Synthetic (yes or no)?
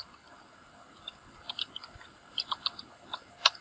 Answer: no